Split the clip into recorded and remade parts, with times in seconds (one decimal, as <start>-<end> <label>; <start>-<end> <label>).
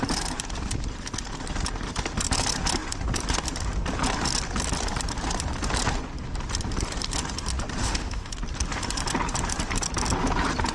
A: 0.0-7.8 recorded; 7.8-8.3 remade; 8.3-10.7 recorded